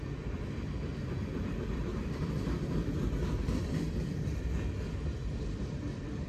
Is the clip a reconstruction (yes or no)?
yes